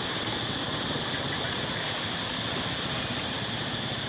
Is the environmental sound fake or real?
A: real